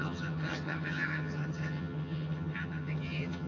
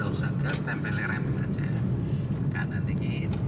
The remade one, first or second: first